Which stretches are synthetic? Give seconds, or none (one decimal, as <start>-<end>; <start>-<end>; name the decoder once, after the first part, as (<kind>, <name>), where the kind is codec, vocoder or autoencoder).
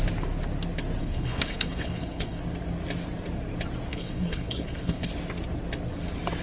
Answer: 1.0-2.4 (codec, HILCodec); 3.9-5.1